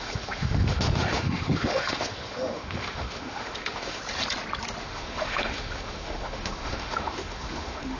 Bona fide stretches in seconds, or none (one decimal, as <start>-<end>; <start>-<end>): 4.0-4.8